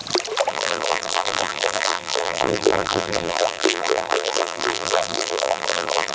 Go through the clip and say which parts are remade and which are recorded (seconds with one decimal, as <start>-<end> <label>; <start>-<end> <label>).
0.0-0.5 recorded; 0.5-6.1 remade